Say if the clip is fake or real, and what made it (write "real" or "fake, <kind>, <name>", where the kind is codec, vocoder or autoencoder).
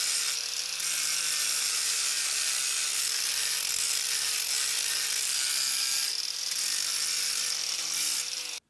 real